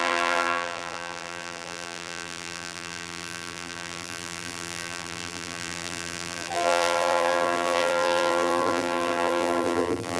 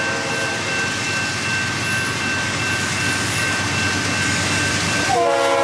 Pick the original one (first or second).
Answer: second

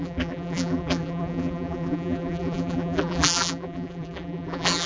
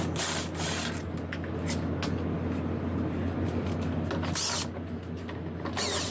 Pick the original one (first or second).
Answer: second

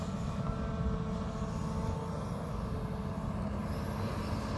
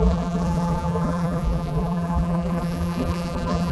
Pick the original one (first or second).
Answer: first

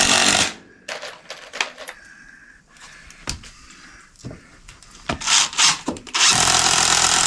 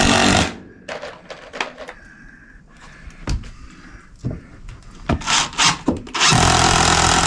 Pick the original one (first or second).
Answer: second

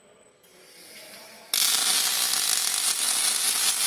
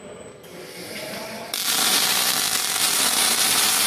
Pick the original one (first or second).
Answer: first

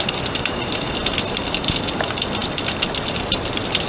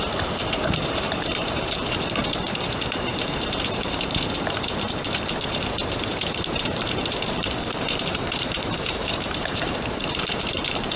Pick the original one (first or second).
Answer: first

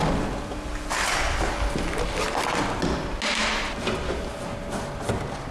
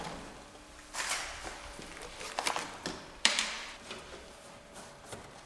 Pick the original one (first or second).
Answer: first